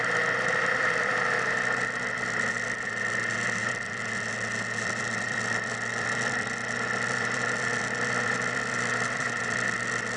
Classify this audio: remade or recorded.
remade